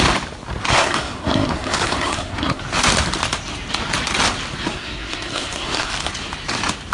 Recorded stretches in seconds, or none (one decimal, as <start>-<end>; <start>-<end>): 0.0-0.7; 2.6-4.6; 5.9-6.9